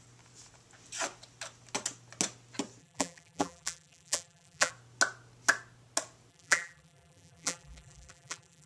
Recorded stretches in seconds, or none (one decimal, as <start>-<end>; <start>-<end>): 0.0-2.8; 4.7-6.3